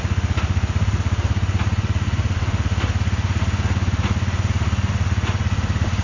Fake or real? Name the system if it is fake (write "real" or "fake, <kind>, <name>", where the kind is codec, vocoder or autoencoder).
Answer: real